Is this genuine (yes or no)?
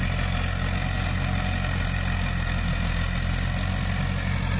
yes